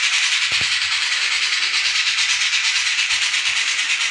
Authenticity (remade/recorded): remade